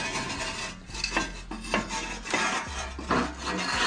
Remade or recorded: recorded